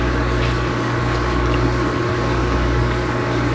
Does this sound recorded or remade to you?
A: remade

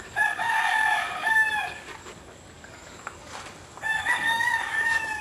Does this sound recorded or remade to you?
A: remade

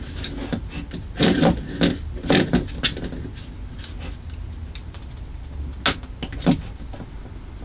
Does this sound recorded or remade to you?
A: recorded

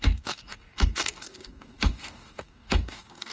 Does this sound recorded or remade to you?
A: remade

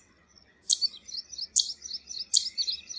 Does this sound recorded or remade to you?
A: recorded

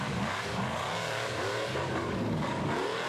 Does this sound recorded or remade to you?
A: remade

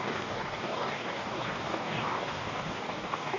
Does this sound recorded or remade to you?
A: remade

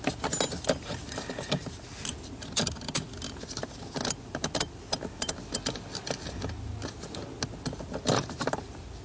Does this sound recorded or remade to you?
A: recorded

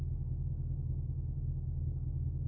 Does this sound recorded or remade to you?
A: remade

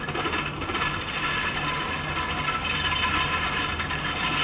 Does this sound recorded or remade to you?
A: recorded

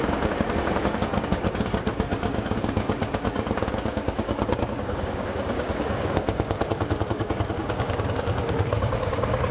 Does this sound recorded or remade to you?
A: remade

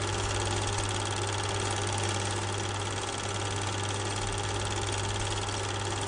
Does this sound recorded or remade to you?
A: recorded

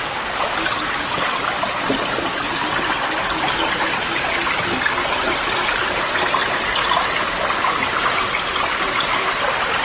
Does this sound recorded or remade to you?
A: recorded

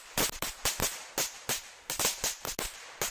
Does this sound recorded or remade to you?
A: recorded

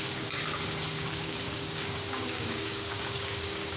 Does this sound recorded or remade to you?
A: remade